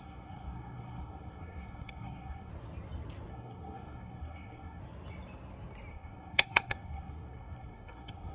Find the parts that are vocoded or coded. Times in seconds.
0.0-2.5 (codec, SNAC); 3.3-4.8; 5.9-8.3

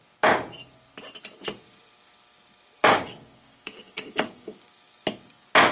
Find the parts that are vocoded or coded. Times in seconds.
2.8-4.7 (codec, DAC)

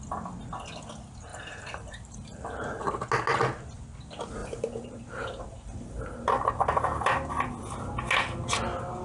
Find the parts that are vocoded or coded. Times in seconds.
1.3-2.9 (vocoder, BigVGAN v2); 4.4-6.5

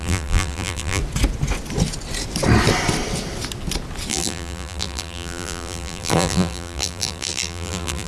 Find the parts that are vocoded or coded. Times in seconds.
0.0-1.0 (vocoder, BigVGAN v2); 4.1-8.1

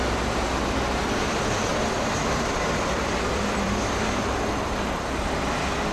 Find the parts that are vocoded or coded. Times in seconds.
1.7-5.2 (vocoder, BigVGAN v2)

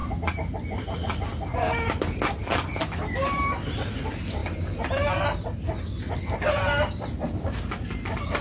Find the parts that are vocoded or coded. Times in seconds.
none